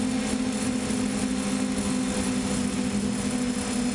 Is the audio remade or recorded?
recorded